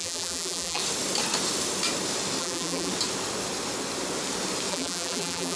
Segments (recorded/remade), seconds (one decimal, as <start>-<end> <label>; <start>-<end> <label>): 0.0-0.8 remade; 0.8-2.4 recorded; 2.4-2.9 remade; 2.9-4.7 recorded; 4.7-5.6 remade